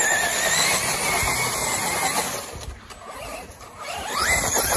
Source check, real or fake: real